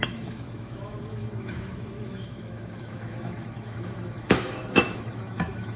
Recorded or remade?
remade